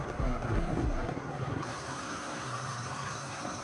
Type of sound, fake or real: fake